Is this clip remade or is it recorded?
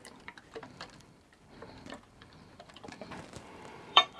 remade